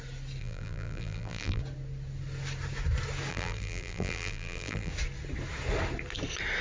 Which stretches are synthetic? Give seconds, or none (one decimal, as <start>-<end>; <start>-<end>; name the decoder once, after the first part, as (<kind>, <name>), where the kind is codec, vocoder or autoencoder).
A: 0.4-1.6 (vocoder, BigVGAN v2); 3.3-4.9